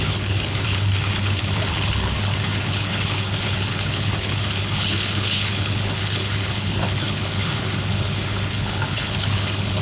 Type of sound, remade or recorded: remade